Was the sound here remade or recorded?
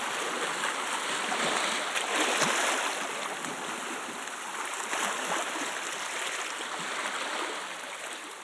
recorded